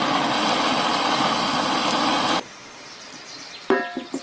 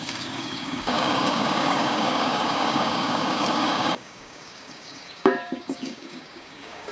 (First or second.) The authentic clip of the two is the first